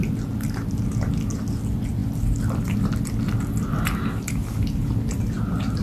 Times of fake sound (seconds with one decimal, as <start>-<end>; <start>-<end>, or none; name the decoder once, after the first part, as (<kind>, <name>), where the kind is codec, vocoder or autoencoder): none

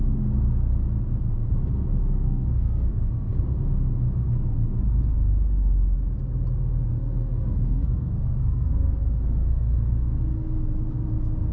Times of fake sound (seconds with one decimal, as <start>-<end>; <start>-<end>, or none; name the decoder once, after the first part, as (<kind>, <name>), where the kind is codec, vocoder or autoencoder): 2.0-3.3 (codec, SNAC); 6.9-10.2

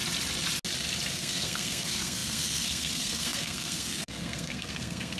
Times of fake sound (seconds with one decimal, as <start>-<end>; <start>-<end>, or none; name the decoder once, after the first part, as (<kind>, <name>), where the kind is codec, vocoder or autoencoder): 1.1-5.2 (codec, SNAC)

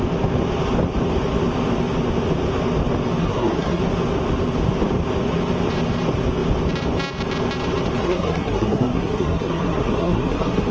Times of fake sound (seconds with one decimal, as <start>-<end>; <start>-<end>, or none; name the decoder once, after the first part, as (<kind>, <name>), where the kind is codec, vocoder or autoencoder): 3.2-3.8 (codec, SNAC); 8.0-10.7

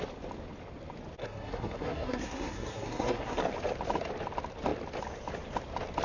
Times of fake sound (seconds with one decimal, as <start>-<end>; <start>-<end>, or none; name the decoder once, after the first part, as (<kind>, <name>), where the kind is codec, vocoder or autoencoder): 1.2-3.4 (codec, SNAC)